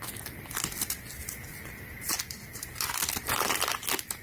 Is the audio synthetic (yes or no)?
no